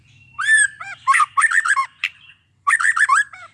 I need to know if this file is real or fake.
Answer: fake